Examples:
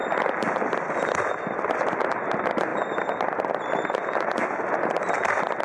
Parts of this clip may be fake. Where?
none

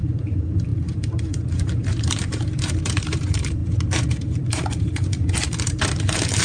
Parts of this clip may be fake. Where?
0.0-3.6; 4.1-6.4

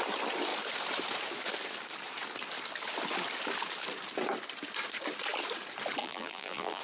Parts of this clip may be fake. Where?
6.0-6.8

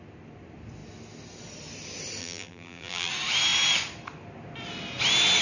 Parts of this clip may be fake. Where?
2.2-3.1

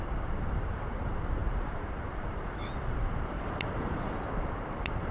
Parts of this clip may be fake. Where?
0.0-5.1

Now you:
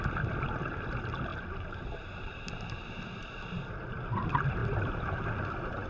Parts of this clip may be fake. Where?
4.6-5.2

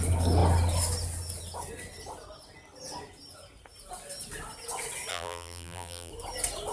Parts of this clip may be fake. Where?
5.1-6.1

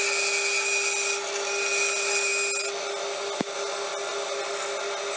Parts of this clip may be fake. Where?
none